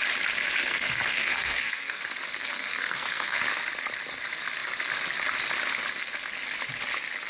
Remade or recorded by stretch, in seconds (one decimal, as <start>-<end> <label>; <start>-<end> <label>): 0.0-0.6 recorded; 0.6-2.0 remade; 2.0-2.4 recorded; 2.4-3.4 remade; 3.4-7.3 recorded